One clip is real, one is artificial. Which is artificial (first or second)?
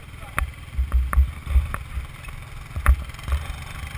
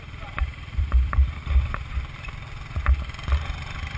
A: second